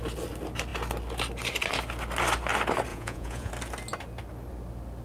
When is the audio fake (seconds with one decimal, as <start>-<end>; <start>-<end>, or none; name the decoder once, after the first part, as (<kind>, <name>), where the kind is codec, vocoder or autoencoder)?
2.9-3.5 (vocoder, Vocos)

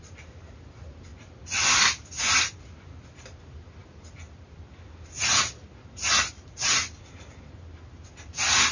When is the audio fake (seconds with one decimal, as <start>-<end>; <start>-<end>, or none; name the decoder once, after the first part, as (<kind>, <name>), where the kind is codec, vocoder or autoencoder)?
none

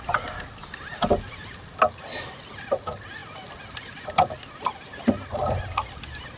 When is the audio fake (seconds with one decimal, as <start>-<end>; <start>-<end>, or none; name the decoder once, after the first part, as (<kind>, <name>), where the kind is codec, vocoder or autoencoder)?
none

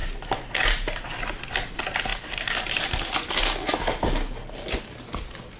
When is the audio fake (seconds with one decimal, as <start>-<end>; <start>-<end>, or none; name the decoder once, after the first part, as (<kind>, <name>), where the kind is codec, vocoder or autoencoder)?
none

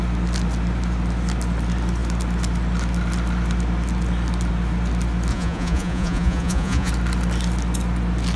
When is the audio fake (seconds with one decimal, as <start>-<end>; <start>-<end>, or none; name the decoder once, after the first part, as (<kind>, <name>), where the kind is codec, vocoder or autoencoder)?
5.3-6.9 (vocoder, Vocos)

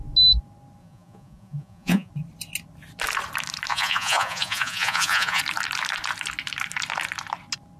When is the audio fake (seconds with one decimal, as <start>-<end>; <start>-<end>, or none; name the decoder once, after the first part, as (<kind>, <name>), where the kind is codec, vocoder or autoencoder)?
0.8-2.1 (vocoder, Vocos); 3.7-5.4

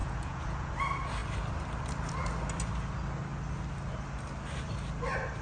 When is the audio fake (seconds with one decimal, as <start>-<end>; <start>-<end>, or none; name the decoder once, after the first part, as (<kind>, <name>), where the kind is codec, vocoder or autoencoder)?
0.0-0.7 (vocoder, Vocos)